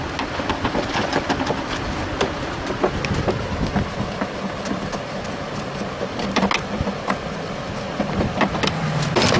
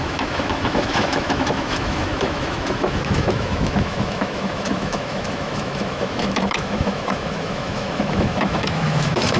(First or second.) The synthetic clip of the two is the second